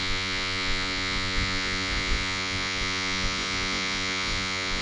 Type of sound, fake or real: fake